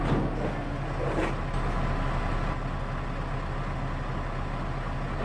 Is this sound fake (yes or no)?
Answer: no